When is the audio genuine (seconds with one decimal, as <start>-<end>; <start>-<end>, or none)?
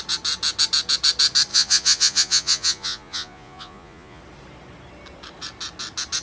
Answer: 0.0-1.5; 4.2-6.2